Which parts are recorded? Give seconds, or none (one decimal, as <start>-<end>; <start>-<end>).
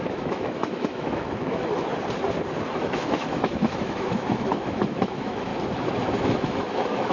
1.9-2.6; 5.5-6.2